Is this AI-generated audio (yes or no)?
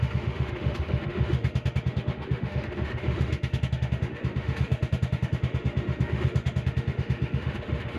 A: yes